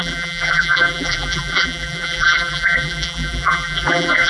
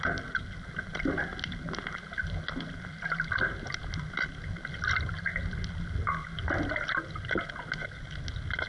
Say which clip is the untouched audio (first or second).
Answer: second